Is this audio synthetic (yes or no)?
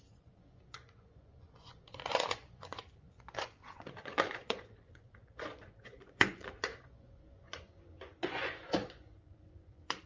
yes